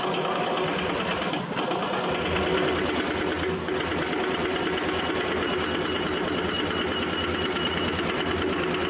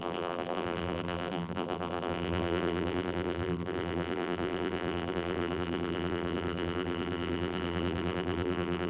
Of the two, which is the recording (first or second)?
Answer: first